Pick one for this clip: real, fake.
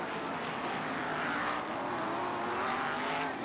real